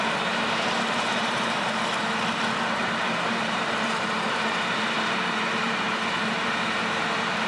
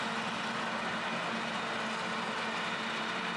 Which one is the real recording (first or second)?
second